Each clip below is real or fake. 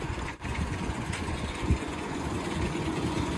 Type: fake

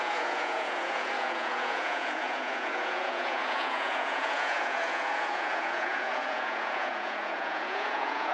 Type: fake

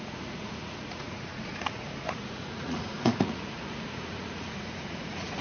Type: fake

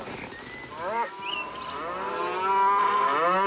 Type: real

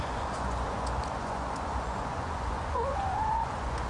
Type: fake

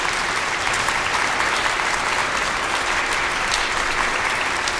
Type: real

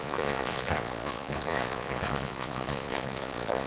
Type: fake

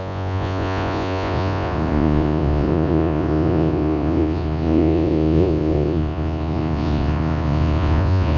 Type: fake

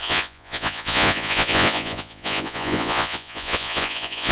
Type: fake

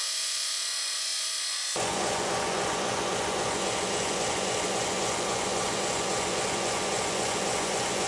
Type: fake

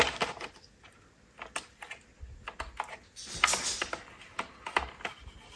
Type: real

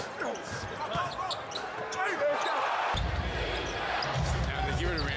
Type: real